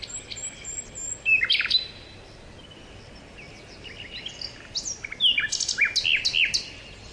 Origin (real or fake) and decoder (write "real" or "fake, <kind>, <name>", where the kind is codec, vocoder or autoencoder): real